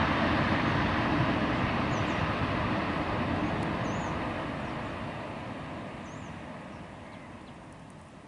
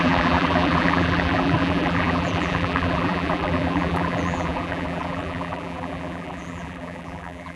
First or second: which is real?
first